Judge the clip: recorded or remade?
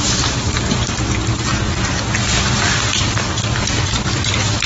remade